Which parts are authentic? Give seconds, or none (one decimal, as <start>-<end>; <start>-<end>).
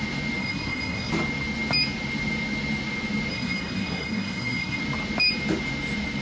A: 0.0-0.4; 1.1-3.3; 4.8-6.2